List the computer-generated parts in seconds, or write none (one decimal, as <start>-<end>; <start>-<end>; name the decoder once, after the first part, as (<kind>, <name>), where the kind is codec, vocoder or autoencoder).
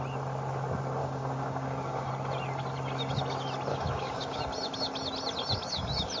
1.0-2.1 (codec, DAC); 3.7-4.4